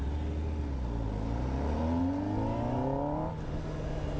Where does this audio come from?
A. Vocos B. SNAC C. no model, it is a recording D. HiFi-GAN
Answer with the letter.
C